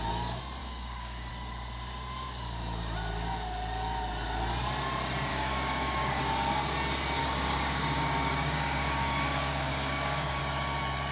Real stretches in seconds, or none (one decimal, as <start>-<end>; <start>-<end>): 0.0-0.6; 1.3-5.3; 6.2-7.2; 10.4-11.1